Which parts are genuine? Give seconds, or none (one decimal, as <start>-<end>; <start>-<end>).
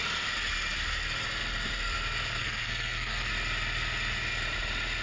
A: 0.0-2.4; 3.3-5.0